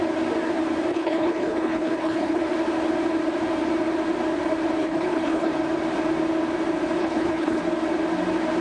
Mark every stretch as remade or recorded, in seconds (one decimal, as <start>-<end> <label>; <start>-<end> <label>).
0.0-0.9 recorded; 0.9-2.4 remade; 2.4-4.8 recorded; 4.8-5.5 remade; 5.5-7.0 recorded; 7.0-7.6 remade; 7.6-8.6 recorded